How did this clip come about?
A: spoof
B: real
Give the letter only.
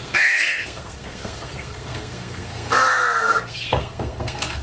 A